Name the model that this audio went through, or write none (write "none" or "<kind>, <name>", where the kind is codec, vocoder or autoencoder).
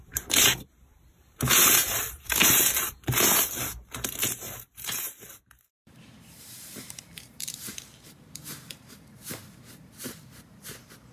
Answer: vocoder, BigVGAN v2